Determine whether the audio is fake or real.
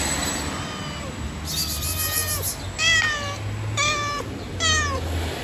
real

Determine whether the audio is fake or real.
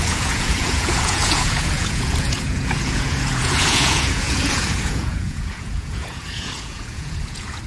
fake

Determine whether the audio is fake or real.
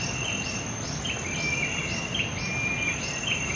real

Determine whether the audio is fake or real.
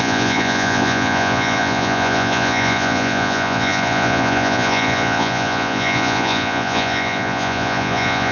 fake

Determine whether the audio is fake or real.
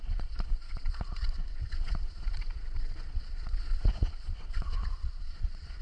fake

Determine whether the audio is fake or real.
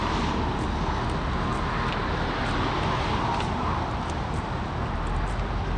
real